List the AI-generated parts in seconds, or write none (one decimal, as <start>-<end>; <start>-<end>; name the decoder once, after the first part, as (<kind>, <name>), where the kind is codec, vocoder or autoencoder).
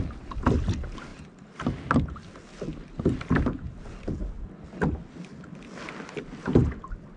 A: none